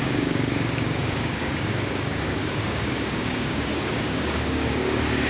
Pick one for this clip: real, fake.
fake